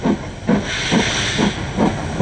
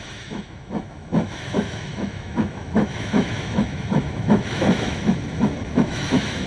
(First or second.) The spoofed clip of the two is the second